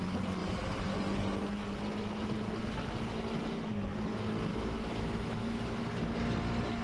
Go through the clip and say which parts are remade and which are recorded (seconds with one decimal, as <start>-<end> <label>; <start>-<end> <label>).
0.0-4.5 recorded; 4.5-5.8 remade; 5.8-6.8 recorded